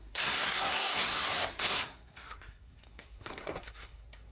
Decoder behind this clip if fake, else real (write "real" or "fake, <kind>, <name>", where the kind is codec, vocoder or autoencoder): fake, codec, SNAC